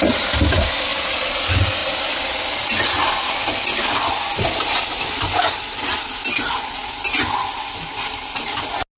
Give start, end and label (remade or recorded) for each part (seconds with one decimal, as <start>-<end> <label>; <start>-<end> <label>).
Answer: 0.0-0.9 recorded; 0.9-1.4 remade; 1.4-1.8 recorded; 1.8-2.4 remade; 2.4-9.0 recorded